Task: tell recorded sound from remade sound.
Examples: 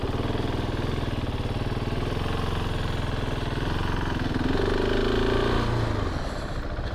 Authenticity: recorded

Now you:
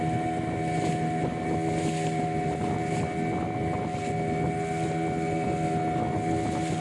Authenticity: recorded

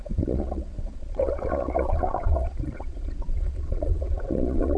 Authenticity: remade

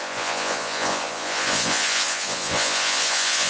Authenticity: remade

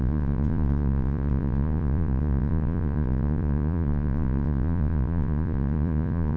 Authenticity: remade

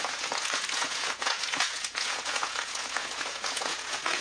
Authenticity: remade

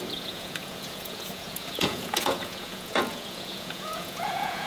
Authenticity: remade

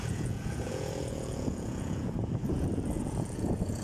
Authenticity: remade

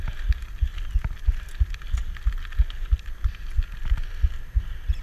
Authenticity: recorded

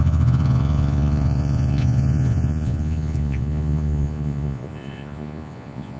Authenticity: remade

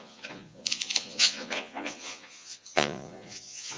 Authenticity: remade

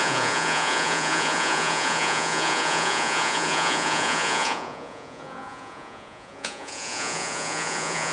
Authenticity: remade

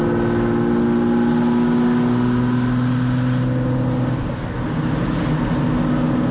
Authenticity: recorded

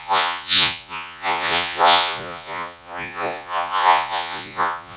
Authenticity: remade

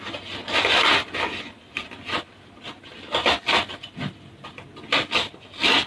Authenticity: recorded